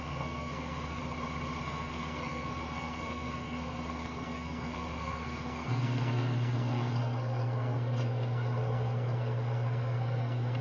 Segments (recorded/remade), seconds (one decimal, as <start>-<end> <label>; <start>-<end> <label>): 0.0-1.0 remade; 1.0-1.6 recorded; 1.6-10.6 remade